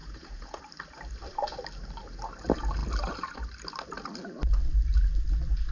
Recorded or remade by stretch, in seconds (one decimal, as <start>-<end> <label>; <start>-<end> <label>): 0.0-0.6 remade; 0.6-5.7 recorded